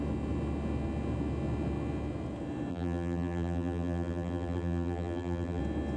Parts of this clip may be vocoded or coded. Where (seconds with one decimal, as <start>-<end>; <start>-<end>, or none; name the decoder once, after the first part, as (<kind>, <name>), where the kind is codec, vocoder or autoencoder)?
2.7-5.6 (vocoder, BigVGAN v2)